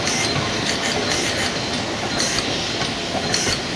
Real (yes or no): yes